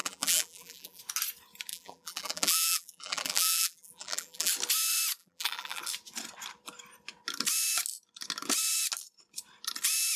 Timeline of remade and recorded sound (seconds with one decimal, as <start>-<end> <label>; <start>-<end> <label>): 0.0-1.0 remade; 1.0-1.7 recorded; 1.7-4.5 remade; 4.5-5.2 recorded; 5.2-5.8 remade; 5.8-10.2 recorded